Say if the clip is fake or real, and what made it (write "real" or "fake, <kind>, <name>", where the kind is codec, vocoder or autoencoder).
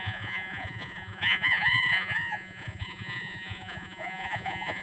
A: fake, vocoder, Vocos